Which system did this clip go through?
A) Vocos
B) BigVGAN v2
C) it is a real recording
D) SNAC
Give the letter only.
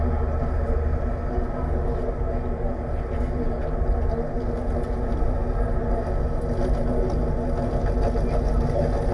C